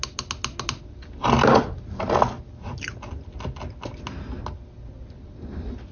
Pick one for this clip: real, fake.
real